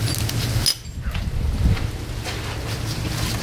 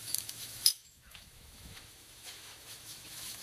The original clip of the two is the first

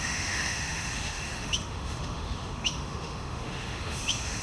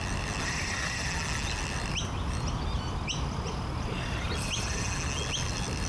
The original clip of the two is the second